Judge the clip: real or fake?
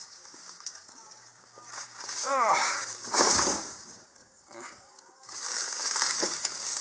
fake